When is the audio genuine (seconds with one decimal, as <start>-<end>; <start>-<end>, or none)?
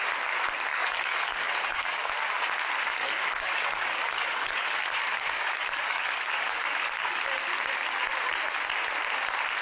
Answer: 0.0-0.7; 2.1-3.0; 7.2-9.6